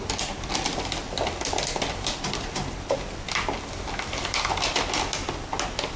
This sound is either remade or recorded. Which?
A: recorded